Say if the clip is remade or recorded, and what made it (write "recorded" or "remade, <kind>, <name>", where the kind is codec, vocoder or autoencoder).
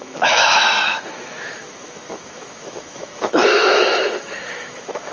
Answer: remade, autoencoder, DAC-VAE